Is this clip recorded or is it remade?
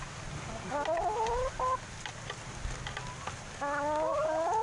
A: recorded